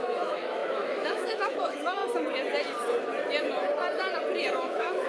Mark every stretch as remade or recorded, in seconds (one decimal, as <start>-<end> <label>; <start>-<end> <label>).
0.0-2.0 remade; 2.0-4.4 recorded; 4.4-5.1 remade